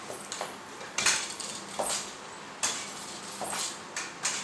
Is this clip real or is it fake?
real